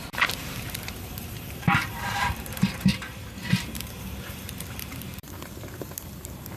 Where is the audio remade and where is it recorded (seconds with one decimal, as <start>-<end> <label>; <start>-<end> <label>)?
0.0-6.6 remade